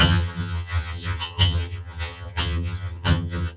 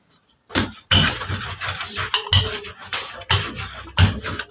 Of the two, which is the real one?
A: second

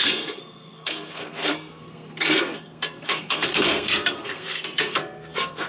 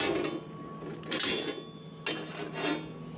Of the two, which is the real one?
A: second